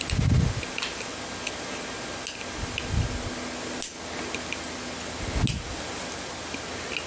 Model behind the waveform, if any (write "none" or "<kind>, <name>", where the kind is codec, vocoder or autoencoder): none